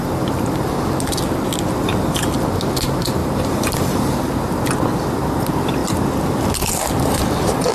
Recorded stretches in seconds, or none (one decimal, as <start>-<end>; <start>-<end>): 0.0-3.2; 4.6-7.7